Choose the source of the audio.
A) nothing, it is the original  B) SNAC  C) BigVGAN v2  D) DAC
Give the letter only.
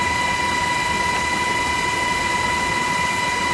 A